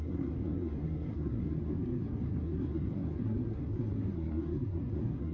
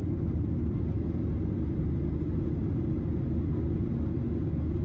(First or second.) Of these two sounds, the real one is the second